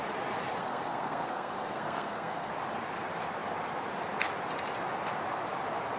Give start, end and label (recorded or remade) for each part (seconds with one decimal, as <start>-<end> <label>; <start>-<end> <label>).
0.0-0.6 recorded; 0.6-2.5 remade; 2.5-6.0 recorded